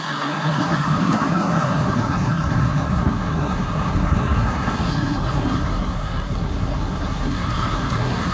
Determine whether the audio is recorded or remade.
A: remade